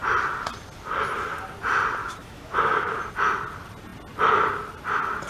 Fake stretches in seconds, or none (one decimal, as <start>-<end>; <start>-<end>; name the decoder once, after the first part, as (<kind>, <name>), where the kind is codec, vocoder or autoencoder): 2.0-3.0 (autoencoder, DAC-VAE)